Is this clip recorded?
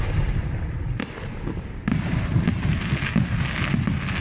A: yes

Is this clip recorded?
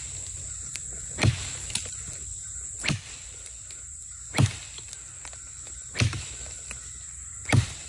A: no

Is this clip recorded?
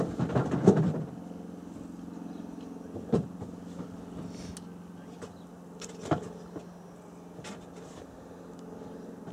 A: yes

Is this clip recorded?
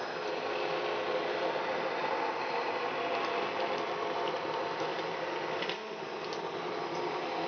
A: yes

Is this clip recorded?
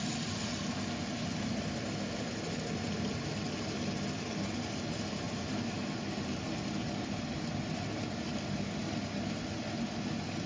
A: yes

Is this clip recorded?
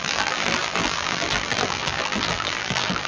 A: no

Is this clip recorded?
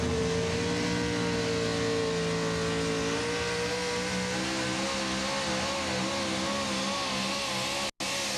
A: yes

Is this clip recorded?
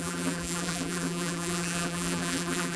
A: no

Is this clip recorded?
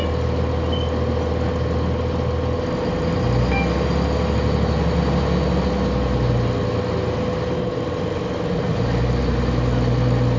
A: yes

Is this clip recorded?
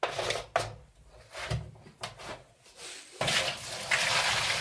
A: yes